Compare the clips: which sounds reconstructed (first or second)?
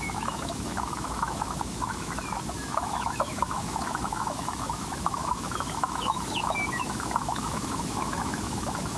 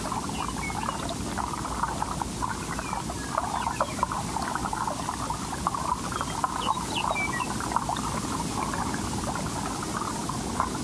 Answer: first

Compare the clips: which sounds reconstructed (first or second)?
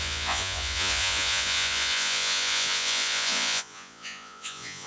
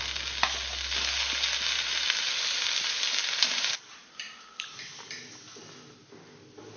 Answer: first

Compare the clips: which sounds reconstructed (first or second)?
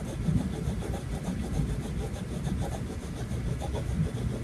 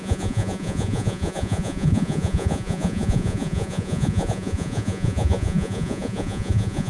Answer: second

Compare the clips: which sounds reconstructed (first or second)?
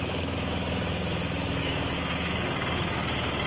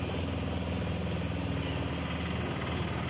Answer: first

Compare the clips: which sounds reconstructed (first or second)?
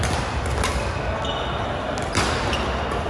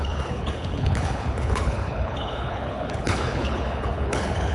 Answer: second